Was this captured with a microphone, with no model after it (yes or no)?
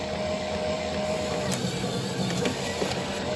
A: yes